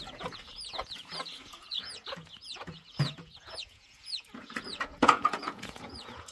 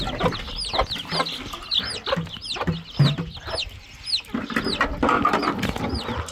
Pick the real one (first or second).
second